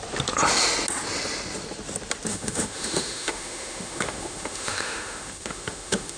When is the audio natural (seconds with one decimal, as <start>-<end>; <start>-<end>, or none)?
0.0-2.3